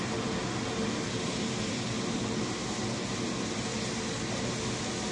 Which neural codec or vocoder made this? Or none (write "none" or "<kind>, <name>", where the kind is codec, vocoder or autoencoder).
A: none